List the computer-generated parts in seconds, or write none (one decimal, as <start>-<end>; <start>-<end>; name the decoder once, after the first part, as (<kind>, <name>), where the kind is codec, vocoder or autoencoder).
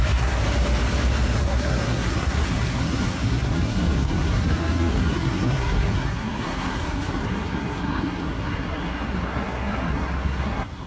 0.0-0.4 (codec, SNAC); 1.4-10.9